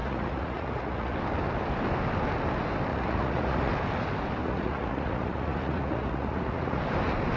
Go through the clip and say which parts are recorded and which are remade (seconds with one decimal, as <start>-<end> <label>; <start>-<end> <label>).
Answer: 0.0-1.1 remade; 1.1-2.9 recorded; 2.9-3.7 remade; 3.7-4.4 recorded; 4.4-6.8 remade; 6.8-7.4 recorded